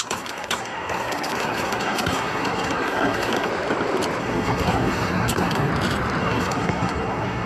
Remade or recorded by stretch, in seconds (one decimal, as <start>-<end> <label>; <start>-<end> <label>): 0.0-3.5 remade; 3.5-4.2 recorded; 4.2-5.7 remade; 5.7-6.2 recorded; 6.2-7.5 remade